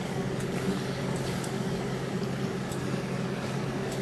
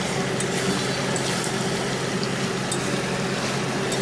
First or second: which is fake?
first